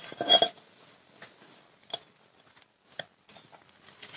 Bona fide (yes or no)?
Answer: yes